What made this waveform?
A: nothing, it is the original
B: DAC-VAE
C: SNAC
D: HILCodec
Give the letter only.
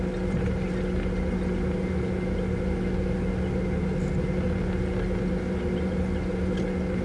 A